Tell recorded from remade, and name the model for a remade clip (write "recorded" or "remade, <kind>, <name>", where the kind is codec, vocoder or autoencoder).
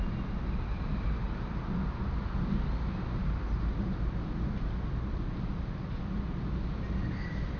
recorded